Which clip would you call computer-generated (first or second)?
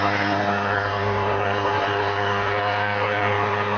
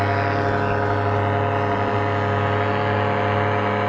first